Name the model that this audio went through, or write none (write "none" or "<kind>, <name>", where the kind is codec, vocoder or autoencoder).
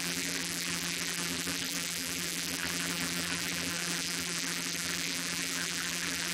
vocoder, BigVGAN v2